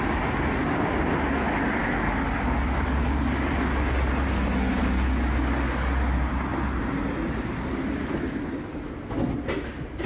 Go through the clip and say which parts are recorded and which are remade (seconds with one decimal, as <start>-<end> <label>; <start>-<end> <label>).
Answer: 0.0-1.8 recorded; 1.8-3.5 remade; 3.5-10.1 recorded